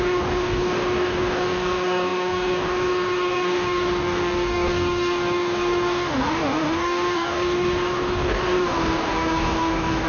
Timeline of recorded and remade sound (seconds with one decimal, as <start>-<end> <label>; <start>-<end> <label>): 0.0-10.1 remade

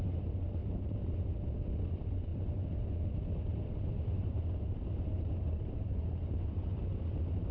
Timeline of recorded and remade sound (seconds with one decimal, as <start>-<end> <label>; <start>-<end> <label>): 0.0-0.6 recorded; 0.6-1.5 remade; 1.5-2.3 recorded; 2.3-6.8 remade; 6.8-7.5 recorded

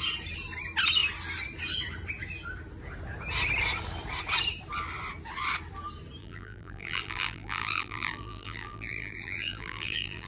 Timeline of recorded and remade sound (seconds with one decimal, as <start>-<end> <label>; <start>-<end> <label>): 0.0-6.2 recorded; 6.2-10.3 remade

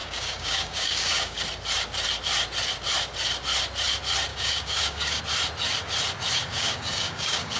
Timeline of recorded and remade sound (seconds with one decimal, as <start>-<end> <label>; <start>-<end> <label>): 0.0-1.4 remade; 1.4-4.3 recorded; 4.3-5.2 remade; 5.2-6.4 recorded; 6.4-7.6 remade

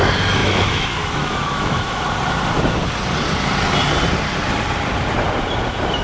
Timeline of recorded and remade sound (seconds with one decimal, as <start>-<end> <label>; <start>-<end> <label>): 0.0-0.4 recorded; 0.4-2.0 remade; 2.0-6.0 recorded